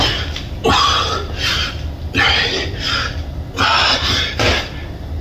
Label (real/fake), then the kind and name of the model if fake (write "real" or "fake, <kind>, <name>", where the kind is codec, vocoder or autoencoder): fake, vocoder, BigVGAN v2